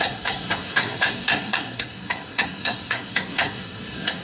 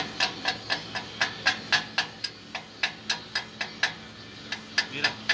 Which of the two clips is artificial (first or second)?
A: first